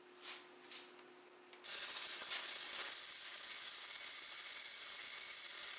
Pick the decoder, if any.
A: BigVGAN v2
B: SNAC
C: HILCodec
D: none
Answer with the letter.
D